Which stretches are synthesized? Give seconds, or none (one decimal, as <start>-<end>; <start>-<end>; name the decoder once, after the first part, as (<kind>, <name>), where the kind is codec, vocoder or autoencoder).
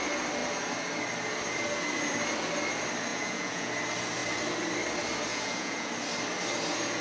3.1-3.7 (vocoder, Vocos); 5.3-5.9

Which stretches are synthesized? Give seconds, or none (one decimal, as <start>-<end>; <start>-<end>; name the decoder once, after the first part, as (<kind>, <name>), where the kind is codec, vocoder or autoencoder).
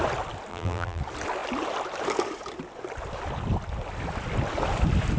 0.5-1.0 (vocoder, BigVGAN v2)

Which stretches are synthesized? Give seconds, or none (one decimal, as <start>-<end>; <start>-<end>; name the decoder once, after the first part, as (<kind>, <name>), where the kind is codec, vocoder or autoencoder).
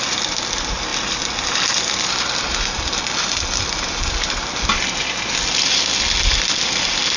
none